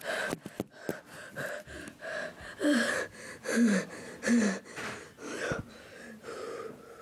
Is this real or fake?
real